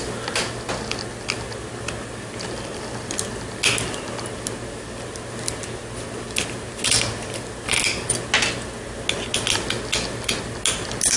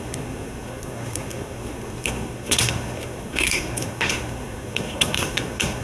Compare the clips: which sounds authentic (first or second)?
first